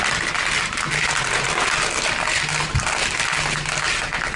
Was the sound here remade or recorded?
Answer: recorded